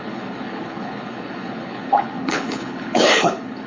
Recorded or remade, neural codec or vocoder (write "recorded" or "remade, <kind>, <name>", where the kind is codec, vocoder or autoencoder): remade, codec, HILCodec